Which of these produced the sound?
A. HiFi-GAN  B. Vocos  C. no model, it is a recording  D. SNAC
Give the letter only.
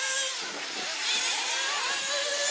C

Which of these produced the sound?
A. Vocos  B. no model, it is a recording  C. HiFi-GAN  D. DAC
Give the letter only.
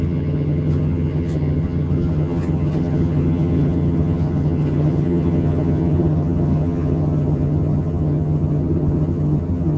C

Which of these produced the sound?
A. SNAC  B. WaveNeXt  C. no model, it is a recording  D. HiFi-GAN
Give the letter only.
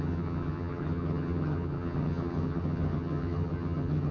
D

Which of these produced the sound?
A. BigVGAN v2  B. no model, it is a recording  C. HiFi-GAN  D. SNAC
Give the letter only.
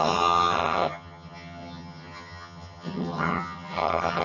C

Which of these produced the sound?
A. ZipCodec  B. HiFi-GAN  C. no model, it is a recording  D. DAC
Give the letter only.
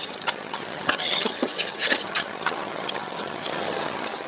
B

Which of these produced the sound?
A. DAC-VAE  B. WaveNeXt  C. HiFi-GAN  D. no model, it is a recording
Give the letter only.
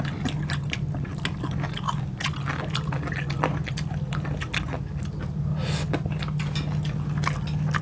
D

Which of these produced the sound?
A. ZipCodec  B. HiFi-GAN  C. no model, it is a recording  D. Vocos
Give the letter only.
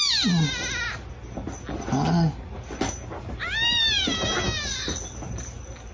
C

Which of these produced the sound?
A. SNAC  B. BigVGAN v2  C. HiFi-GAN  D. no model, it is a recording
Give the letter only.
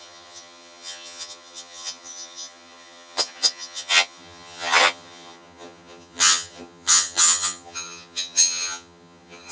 C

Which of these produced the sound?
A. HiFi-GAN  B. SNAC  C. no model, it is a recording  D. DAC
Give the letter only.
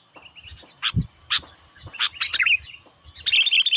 C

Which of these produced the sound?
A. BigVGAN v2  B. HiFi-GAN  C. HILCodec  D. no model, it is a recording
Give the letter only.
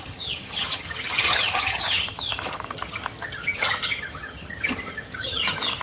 B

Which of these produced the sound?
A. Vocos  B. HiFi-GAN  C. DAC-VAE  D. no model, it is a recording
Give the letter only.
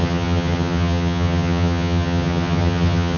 B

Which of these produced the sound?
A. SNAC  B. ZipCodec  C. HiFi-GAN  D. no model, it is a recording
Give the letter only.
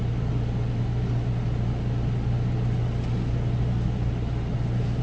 D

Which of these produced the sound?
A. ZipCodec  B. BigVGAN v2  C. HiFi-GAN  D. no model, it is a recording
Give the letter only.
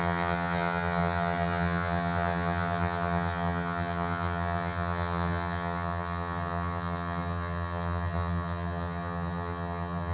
C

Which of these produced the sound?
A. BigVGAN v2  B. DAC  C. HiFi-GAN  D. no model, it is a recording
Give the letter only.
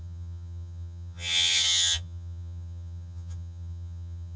C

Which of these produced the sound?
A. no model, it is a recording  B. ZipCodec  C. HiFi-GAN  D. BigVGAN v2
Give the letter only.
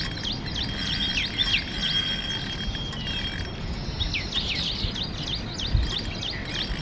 A